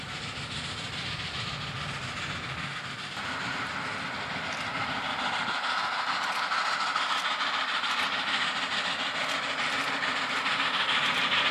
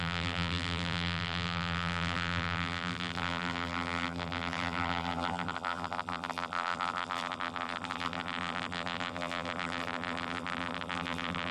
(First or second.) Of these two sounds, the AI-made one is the second